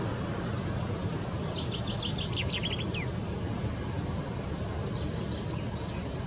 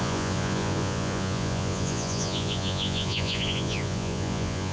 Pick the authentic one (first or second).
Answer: first